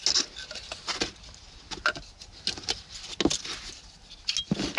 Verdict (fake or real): real